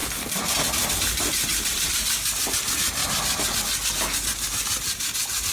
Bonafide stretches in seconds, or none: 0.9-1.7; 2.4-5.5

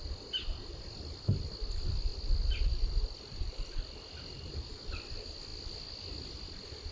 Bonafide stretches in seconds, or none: 0.0-2.1; 4.5-5.5; 6.1-6.9

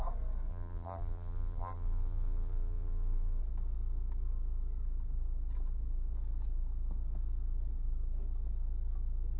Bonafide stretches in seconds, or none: 0.0-0.5; 3.4-9.4

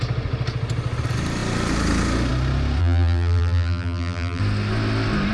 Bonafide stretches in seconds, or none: 0.0-2.8; 4.4-5.3

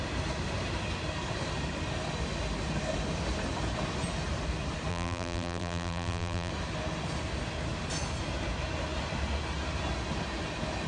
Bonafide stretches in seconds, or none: 0.0-4.9; 6.5-10.9

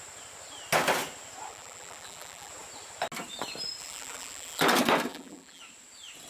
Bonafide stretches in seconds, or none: 0.0-1.5; 2.5-3.8; 4.6-5.1; 5.6-6.3